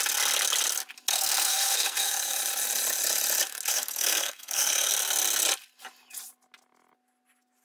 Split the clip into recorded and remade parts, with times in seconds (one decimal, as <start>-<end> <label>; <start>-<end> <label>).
0.0-1.1 recorded; 1.1-2.4 remade; 2.4-3.7 recorded; 3.7-4.9 remade; 4.9-7.6 recorded

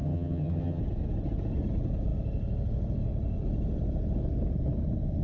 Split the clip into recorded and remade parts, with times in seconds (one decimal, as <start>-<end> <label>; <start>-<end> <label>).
0.0-0.8 remade; 0.8-5.2 recorded

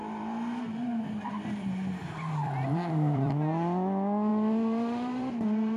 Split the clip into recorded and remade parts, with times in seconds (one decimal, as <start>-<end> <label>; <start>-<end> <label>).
0.0-2.0 recorded; 2.0-3.3 remade; 3.3-4.3 recorded; 4.3-5.3 remade; 5.3-5.8 recorded

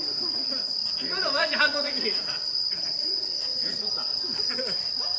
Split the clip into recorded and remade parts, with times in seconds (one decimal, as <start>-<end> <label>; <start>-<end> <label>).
0.0-0.8 recorded; 0.8-3.9 remade; 3.9-5.2 recorded

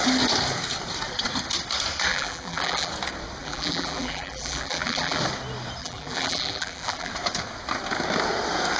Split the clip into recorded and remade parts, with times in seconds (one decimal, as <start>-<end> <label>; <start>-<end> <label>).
0.0-2.1 recorded; 2.1-2.9 remade; 2.9-3.4 recorded; 3.4-5.2 remade; 5.2-5.8 recorded; 5.8-7.1 remade; 7.1-8.8 recorded

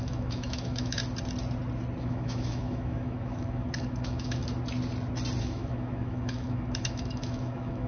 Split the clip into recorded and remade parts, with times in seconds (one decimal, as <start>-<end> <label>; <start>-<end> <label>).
0.0-1.0 remade; 1.0-2.0 recorded; 2.0-4.4 remade; 4.4-5.4 recorded; 5.4-7.9 remade

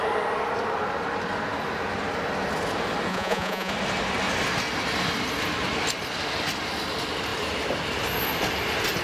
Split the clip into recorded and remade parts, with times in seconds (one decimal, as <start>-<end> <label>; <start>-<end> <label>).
0.0-3.1 recorded; 3.1-3.7 remade; 3.7-9.0 recorded